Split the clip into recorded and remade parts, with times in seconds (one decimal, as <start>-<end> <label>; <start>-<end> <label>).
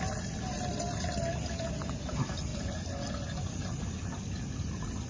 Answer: 0.0-5.1 recorded